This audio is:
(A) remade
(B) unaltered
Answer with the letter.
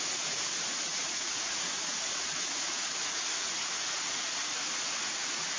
A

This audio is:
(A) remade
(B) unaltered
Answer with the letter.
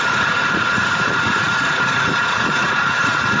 A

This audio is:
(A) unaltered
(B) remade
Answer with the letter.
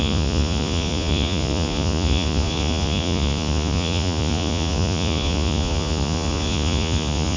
B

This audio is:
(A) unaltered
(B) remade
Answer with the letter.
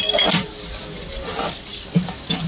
A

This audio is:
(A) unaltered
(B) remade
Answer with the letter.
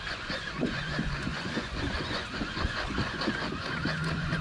B